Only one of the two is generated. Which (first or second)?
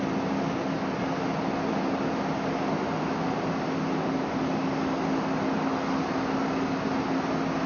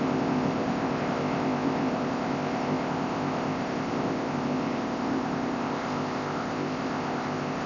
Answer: second